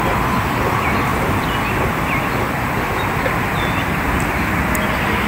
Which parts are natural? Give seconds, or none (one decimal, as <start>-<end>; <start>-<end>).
0.0-5.3